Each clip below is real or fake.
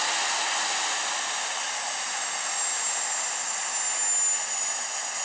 real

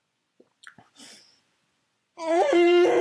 fake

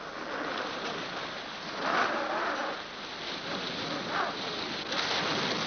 real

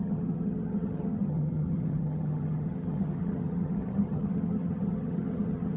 fake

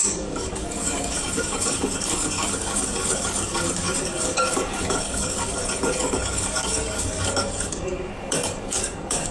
fake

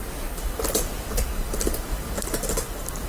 real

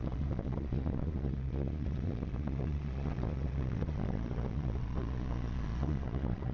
fake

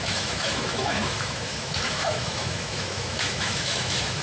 fake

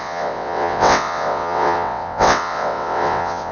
fake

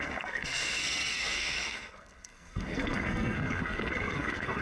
fake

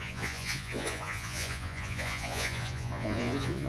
fake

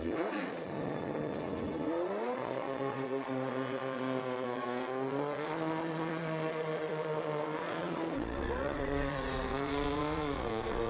fake